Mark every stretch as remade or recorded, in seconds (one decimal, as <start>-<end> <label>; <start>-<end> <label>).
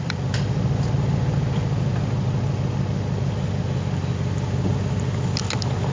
0.0-5.9 recorded